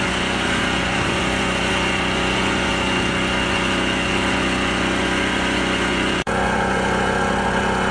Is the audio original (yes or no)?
no